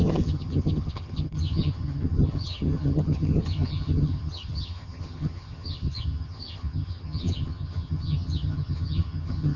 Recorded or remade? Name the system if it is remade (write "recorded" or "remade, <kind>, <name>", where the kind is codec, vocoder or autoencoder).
remade, vocoder, HiFi-GAN